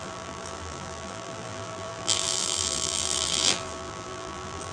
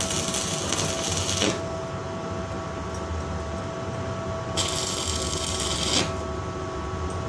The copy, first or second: first